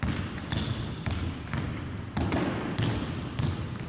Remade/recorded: recorded